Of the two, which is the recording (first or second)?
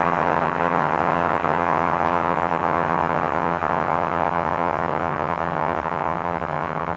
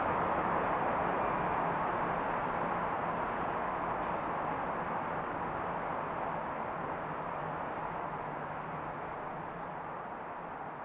second